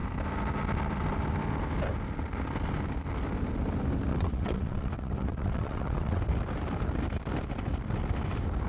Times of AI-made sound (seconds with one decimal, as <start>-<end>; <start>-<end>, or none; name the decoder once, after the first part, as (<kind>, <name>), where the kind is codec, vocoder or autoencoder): 4.1-6.2 (vocoder, WaveNeXt)